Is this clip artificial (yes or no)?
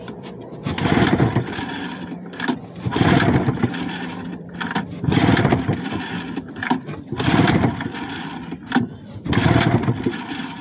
yes